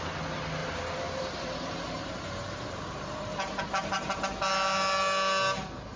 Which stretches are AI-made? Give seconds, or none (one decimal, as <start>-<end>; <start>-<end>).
0.6-4.2